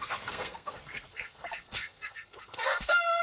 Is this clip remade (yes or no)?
yes